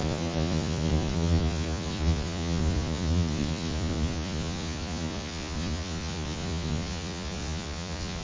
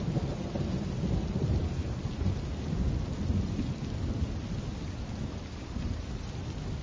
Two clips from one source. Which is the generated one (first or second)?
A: first